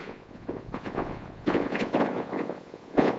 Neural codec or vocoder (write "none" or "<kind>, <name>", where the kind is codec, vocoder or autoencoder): vocoder, Vocos